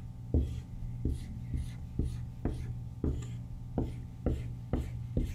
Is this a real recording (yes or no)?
yes